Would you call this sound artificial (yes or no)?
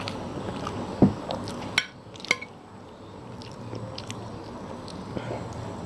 no